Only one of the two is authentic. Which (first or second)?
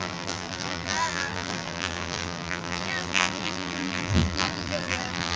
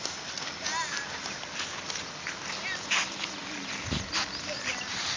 second